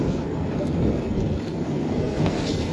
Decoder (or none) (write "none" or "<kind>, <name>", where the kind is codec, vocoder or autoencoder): codec, SNAC